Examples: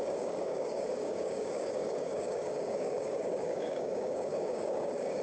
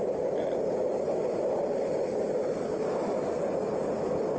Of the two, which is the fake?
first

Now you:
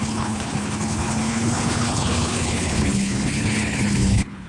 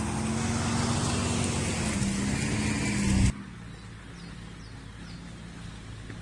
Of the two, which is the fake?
first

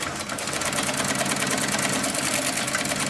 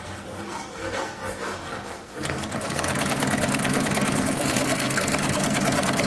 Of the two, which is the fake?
second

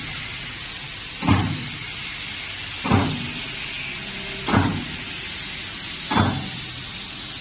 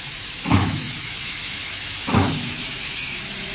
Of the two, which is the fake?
second